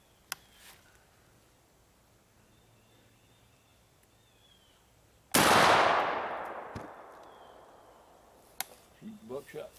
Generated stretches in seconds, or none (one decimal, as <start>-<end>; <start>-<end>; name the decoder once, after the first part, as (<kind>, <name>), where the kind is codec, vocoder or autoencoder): none